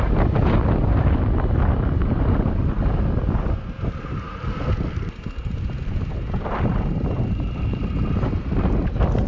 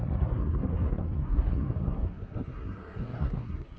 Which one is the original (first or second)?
first